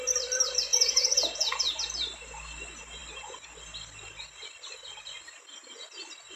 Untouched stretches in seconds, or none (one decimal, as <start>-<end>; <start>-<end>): 0.0-0.7; 1.8-6.4